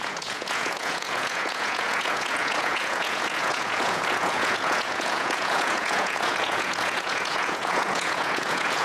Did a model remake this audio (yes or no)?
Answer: yes